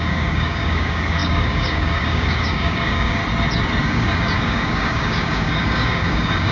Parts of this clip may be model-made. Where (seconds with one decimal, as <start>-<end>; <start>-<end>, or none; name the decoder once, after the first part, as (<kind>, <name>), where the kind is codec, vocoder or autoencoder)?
0.0-3.2 (codec, DAC); 3.8-6.5